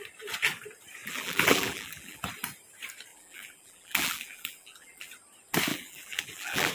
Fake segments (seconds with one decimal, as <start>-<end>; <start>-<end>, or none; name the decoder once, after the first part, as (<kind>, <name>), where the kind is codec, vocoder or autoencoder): 1.0-2.2 (vocoder, BigVGAN v2); 3.1-5.1; 5.7-6.7